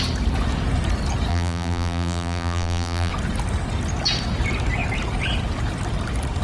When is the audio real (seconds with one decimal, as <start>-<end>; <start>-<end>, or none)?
0.0-1.3; 3.1-6.4